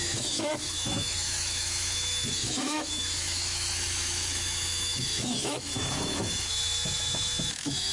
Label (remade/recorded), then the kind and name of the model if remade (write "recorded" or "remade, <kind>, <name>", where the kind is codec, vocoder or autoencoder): remade, autoencoder, DAC-VAE